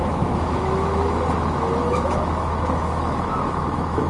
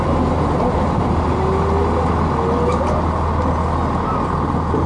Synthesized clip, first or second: first